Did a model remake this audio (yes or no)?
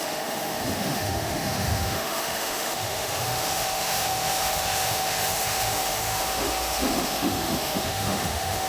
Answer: yes